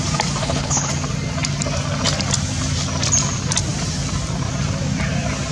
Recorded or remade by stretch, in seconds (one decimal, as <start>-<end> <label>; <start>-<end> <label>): 0.0-0.4 recorded; 0.4-0.9 remade; 0.9-5.5 recorded